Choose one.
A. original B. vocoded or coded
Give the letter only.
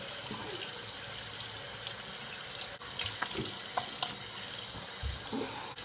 A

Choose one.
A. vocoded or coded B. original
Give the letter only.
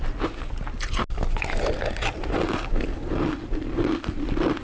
B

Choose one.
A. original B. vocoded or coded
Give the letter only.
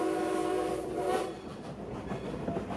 A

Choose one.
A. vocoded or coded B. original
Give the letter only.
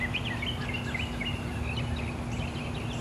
B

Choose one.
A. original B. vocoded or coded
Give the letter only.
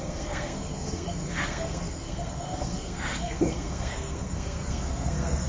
B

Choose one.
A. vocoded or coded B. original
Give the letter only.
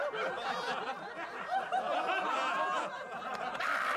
B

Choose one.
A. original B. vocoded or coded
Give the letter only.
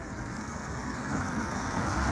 B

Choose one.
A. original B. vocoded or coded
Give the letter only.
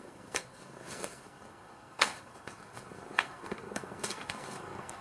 B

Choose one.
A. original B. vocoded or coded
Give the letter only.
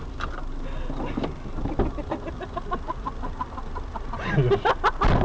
A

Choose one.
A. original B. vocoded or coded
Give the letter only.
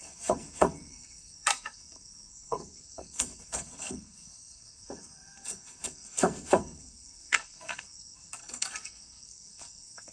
B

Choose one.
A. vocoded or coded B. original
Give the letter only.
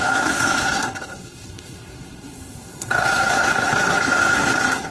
A